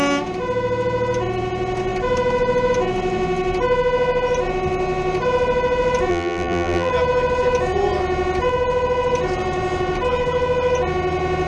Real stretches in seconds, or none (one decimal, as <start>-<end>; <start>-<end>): 0.0-6.1; 6.9-11.5